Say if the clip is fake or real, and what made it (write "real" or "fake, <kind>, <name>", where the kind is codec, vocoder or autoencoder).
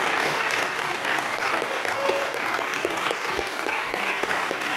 fake, codec, DAC